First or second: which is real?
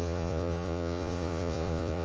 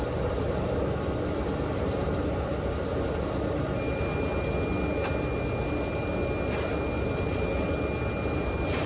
second